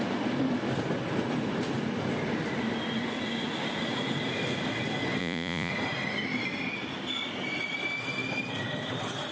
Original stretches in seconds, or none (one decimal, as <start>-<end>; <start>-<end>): 0.0-5.2; 5.7-9.3